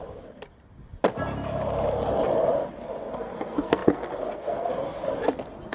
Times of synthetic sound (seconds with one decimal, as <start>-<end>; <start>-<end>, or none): 3.1-4.7